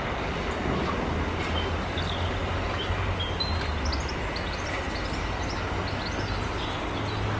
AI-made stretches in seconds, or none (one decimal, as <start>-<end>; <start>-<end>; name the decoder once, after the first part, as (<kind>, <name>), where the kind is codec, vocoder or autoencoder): none